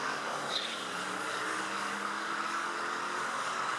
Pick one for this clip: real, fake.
fake